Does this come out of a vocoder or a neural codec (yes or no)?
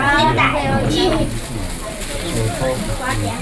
no